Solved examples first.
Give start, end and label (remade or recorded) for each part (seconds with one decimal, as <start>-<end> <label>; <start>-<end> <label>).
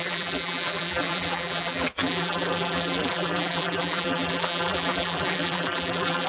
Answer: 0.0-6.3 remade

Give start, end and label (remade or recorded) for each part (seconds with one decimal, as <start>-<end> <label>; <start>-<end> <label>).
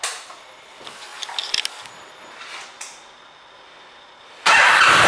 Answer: 0.0-1.1 remade; 1.1-4.2 recorded; 4.2-5.1 remade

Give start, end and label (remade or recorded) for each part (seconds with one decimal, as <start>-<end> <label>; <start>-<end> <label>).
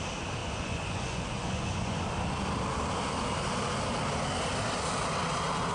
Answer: 0.0-0.4 recorded; 0.4-2.0 remade; 2.0-5.7 recorded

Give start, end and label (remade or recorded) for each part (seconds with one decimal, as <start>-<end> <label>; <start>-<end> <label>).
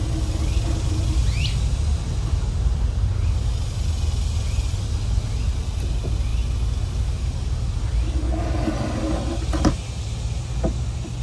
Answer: 0.0-11.2 recorded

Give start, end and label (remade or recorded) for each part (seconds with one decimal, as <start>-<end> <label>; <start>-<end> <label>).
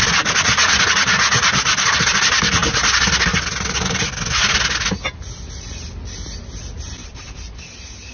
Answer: 0.0-8.1 recorded